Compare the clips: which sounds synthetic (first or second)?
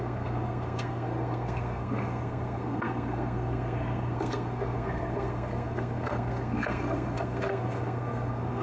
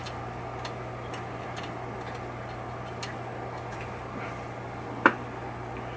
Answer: first